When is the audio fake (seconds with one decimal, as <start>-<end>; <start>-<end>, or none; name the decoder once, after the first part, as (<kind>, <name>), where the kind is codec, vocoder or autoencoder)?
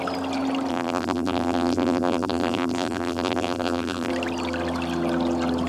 0.7-4.1 (vocoder, BigVGAN v2)